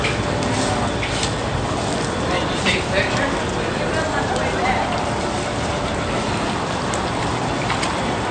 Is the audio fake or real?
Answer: real